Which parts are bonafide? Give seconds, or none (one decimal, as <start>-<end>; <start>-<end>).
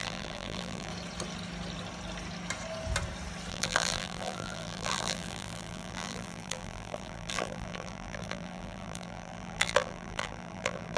0.9-3.5